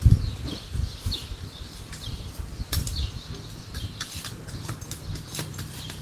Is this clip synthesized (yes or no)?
no